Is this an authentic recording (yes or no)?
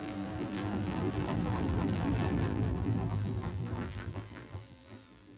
no